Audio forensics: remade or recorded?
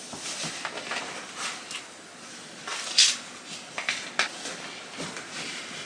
recorded